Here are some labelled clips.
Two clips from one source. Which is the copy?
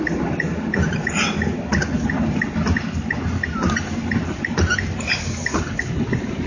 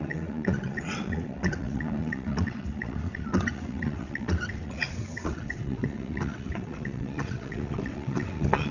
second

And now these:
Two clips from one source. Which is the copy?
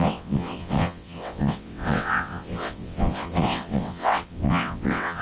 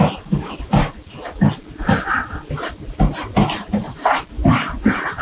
first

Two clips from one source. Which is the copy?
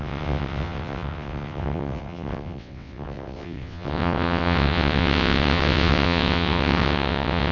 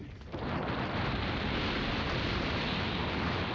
first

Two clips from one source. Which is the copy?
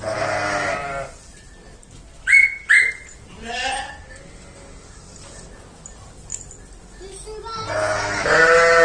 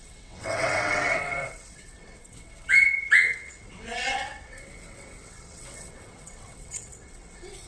second